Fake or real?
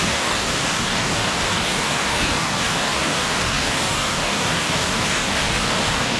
fake